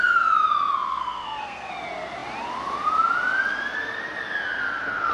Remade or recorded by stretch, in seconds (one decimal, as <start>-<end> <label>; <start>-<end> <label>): 0.0-0.9 recorded; 0.9-1.7 remade; 1.7-5.1 recorded